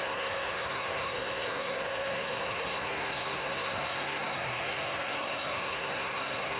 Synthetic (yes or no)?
yes